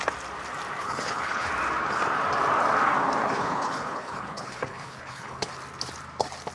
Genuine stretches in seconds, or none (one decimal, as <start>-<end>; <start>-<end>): 0.0-0.8; 1.5-3.2; 5.5-6.5